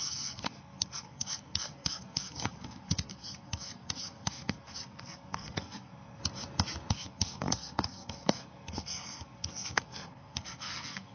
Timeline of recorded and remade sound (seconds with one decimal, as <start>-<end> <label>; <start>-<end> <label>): 0.0-6.2 remade; 6.2-6.9 recorded; 6.9-11.1 remade